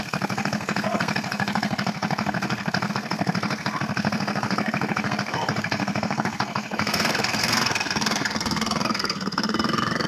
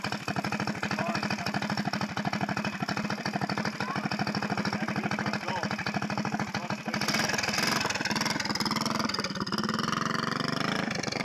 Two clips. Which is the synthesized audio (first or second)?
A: first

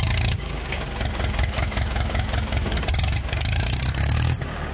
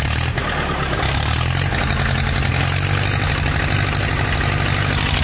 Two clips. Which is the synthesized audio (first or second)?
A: first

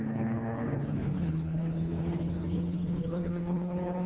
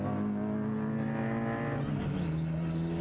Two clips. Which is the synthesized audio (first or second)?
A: first